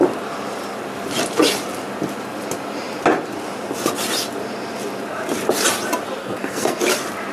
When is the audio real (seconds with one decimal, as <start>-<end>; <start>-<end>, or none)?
0.0-6.2; 6.8-7.3